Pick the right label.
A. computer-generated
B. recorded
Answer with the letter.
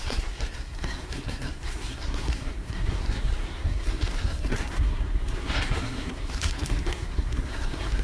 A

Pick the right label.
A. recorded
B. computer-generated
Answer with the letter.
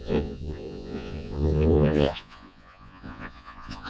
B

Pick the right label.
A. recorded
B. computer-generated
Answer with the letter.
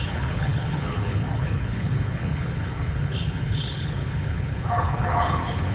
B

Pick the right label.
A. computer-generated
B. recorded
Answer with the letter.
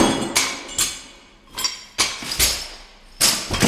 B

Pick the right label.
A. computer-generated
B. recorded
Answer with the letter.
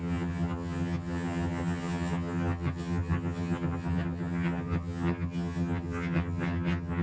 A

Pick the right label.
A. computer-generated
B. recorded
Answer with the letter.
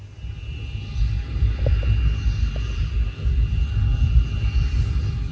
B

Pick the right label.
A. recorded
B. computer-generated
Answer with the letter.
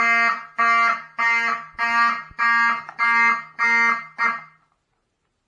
A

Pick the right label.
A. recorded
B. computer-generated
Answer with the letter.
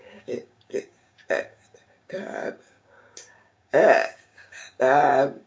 B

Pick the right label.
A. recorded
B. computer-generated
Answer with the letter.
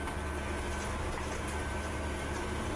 A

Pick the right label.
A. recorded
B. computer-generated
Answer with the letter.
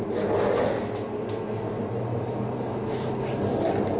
A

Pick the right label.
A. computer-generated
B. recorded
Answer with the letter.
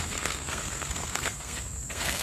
A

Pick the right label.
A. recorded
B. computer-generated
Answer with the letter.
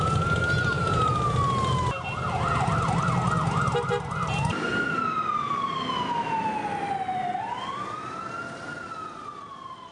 A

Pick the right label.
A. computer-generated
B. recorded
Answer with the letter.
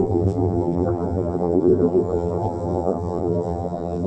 A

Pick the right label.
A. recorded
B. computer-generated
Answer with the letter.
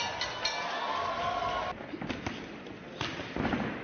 A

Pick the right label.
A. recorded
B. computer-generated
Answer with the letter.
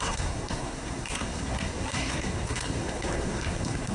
B